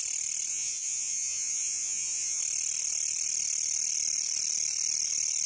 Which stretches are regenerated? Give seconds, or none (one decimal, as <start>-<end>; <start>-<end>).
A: 0.5-2.4